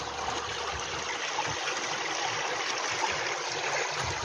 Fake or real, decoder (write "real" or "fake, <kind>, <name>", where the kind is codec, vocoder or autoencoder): real